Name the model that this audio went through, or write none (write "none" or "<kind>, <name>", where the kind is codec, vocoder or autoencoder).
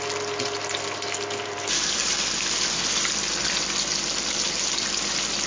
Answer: none